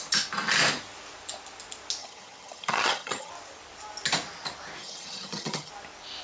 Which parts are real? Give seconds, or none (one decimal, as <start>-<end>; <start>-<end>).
0.0-2.0; 3.3-4.8; 5.7-6.2